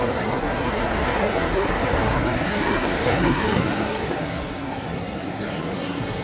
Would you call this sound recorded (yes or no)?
no